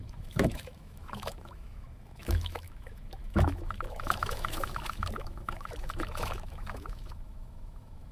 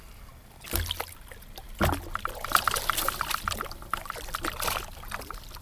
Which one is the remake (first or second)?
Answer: first